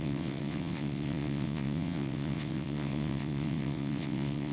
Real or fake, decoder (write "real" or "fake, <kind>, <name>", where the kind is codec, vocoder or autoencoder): fake, vocoder, WaveNeXt